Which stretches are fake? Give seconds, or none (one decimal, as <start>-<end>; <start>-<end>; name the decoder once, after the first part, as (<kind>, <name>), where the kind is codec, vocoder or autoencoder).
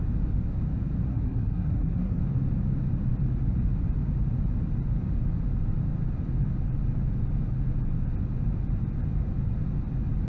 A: 1.1-2.2 (codec, SNAC)